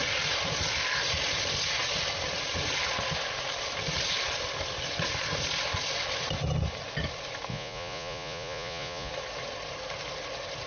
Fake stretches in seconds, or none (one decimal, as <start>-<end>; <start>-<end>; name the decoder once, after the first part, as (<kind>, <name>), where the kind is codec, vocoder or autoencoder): 7.5-9.1 (vocoder, Vocos)